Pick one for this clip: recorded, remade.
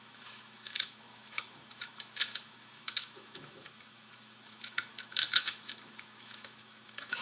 remade